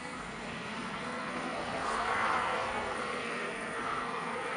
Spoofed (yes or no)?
yes